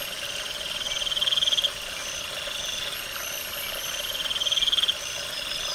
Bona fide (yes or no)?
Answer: yes